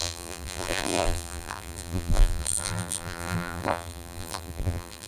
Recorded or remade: remade